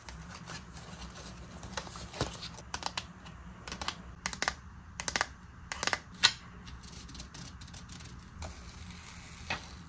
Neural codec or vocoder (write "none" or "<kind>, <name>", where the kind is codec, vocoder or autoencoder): none